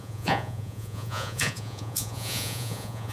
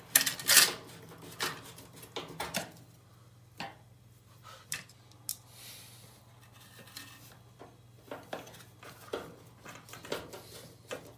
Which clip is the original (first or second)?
second